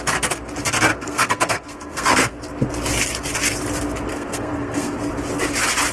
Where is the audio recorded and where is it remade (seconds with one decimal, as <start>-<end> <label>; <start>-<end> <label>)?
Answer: 0.0-0.9 recorded; 0.9-2.4 remade; 2.4-4.1 recorded; 4.1-5.1 remade; 5.1-5.9 recorded